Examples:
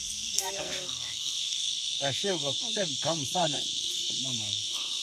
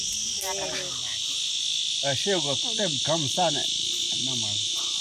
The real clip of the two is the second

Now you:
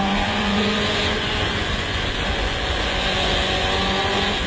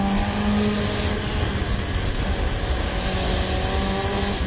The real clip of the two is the second